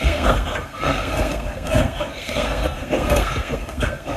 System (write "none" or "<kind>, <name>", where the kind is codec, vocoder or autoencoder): codec, SNAC